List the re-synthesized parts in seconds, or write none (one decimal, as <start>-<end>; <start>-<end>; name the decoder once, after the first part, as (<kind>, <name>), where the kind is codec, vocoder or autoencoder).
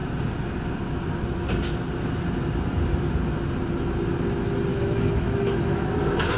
4.7-6.4 (autoencoder, DAC-VAE)